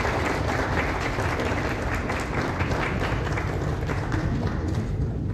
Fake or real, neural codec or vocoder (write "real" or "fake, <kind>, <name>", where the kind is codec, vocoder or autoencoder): real